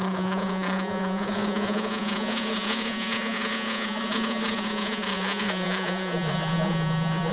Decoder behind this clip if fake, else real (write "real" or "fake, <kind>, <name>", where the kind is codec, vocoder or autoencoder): fake, vocoder, Vocos